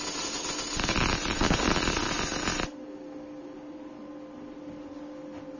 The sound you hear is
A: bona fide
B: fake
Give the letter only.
A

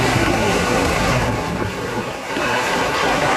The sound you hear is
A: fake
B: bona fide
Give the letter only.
A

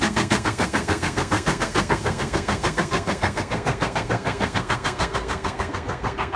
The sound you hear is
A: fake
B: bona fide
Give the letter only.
A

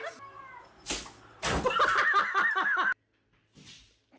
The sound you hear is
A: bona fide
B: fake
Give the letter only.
A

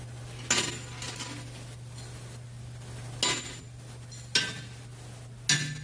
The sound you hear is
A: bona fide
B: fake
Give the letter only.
A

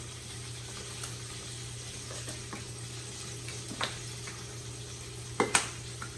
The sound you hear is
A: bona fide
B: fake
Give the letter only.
A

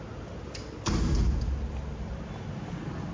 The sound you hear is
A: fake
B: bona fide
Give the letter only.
B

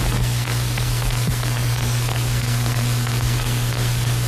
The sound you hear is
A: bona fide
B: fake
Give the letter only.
B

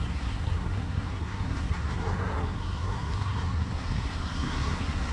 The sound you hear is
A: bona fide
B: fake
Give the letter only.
B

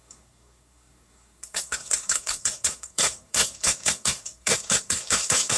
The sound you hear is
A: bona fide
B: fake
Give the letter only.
B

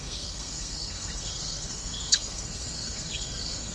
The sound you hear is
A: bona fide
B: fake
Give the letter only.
B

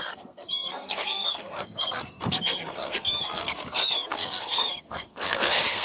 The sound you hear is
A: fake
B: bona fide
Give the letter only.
A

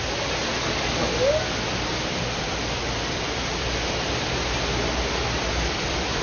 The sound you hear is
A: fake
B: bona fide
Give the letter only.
B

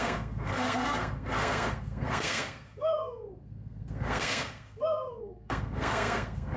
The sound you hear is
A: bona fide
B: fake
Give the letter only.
B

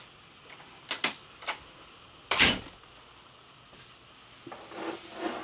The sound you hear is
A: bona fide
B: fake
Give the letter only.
A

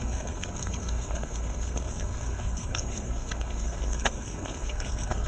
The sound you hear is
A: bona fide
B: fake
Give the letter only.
B